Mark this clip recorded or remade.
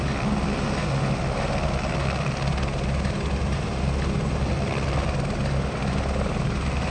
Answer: recorded